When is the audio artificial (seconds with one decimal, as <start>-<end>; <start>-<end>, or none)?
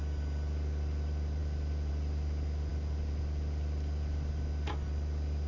none